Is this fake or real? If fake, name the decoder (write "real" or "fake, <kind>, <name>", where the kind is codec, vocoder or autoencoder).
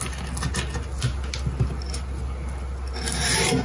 real